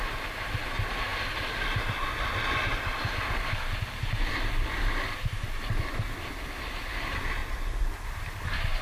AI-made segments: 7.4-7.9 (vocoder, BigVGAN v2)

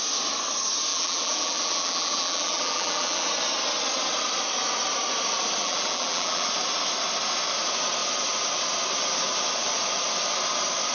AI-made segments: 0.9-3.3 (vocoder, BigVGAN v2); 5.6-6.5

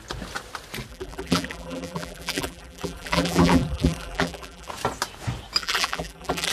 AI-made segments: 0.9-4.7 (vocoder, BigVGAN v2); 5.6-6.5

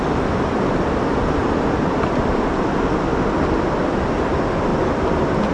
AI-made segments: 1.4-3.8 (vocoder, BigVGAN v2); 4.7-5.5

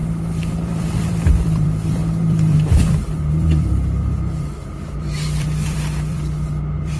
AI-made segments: 0.0-7.0 (vocoder, BigVGAN v2)